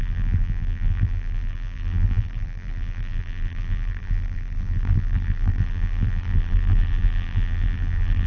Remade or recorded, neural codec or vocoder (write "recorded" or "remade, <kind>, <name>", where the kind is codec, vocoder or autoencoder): remade, vocoder, BigVGAN v2